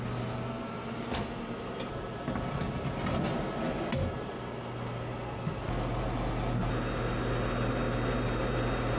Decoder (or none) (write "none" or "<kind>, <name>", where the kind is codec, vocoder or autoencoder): none